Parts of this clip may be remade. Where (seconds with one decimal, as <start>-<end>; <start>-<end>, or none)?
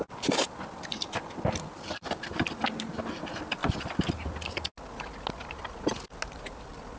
none